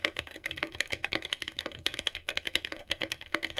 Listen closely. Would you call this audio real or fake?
fake